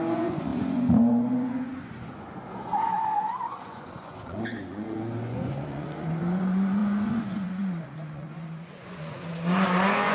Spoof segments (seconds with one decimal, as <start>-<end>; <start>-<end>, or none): 0.0-10.1